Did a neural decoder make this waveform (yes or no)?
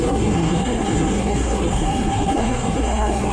yes